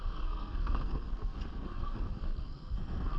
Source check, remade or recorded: remade